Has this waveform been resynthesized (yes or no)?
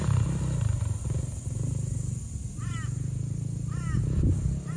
no